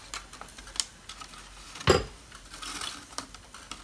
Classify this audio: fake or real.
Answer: real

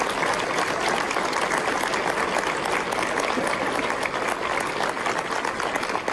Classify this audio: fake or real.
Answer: real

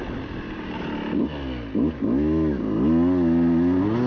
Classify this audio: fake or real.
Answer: real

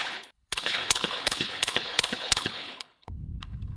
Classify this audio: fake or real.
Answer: fake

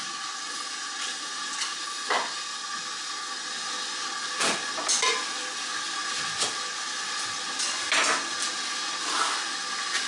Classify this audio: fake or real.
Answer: real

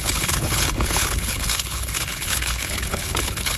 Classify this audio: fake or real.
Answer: fake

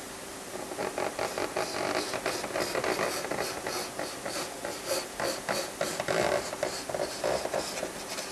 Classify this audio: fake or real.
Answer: real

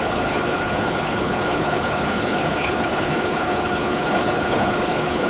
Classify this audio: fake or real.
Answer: fake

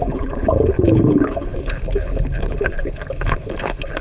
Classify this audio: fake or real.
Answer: fake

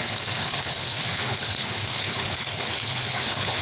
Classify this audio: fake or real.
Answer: fake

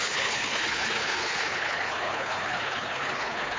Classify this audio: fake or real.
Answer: fake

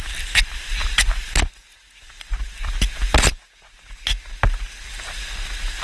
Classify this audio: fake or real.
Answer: real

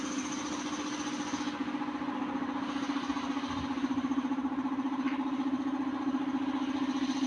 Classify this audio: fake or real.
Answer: real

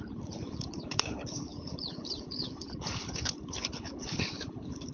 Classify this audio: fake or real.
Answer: fake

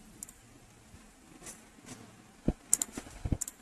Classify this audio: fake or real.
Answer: real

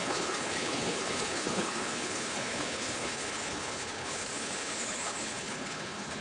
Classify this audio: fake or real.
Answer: fake